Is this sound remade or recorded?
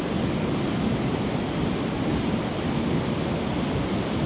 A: recorded